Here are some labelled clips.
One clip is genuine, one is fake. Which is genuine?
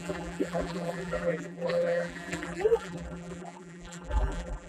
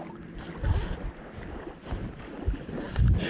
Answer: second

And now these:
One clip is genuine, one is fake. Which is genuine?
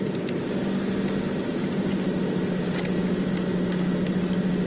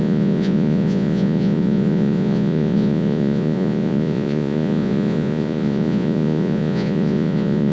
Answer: first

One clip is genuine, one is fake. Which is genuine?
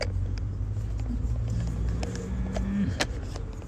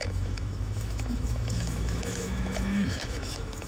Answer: first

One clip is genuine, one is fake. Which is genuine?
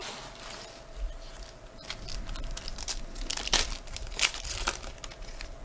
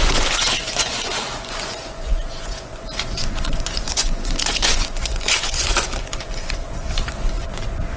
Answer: first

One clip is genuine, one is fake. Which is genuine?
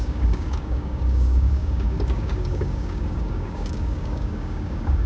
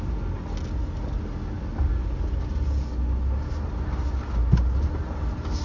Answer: second